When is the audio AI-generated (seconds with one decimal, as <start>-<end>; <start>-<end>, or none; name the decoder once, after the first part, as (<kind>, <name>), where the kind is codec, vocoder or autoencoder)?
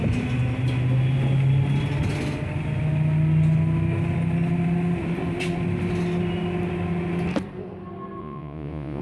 8.2-9.0 (vocoder, Vocos)